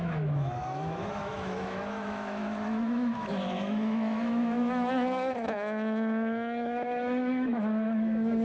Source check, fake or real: fake